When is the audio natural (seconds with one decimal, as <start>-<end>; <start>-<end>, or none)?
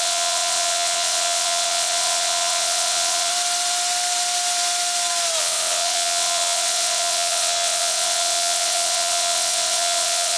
3.3-5.4